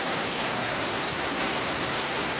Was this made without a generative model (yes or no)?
no